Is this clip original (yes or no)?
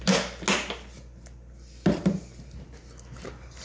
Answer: yes